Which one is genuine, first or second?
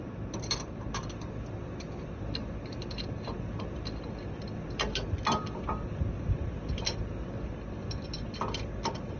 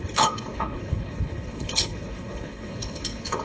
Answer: first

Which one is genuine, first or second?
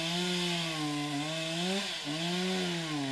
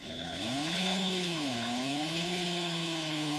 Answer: first